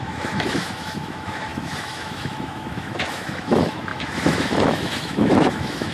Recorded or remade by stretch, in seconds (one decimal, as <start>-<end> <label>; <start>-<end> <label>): 0.0-5.9 remade

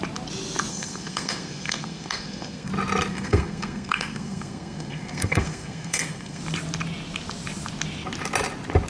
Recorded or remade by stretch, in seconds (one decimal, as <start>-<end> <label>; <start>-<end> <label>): 0.0-0.7 recorded; 0.7-2.7 remade; 2.7-3.1 recorded; 3.1-6.4 remade; 6.4-8.9 recorded

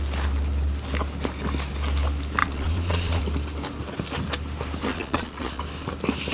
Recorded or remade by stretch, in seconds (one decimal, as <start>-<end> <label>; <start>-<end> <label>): 0.0-2.4 recorded; 2.4-3.2 remade; 3.2-4.9 recorded; 4.9-5.6 remade; 5.6-6.3 recorded

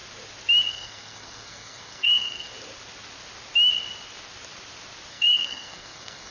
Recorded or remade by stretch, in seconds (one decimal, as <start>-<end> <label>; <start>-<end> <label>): 0.0-0.7 recorded; 0.7-2.5 remade; 2.5-5.1 recorded; 5.1-6.3 remade

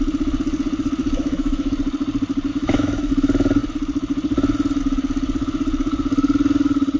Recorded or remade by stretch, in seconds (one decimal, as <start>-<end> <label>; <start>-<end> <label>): 0.0-1.0 recorded; 1.0-1.7 remade; 1.7-2.5 recorded; 2.5-3.1 remade; 3.1-7.0 recorded